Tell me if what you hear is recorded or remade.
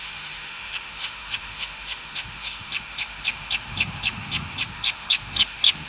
remade